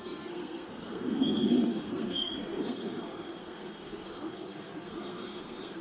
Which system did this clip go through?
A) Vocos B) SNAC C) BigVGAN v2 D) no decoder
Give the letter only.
B